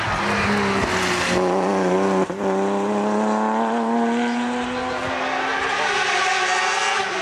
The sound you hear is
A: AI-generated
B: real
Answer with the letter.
B